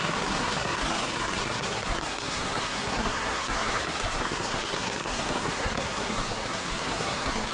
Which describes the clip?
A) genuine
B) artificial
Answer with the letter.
B